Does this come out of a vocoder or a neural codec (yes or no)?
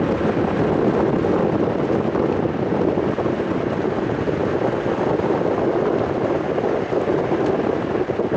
no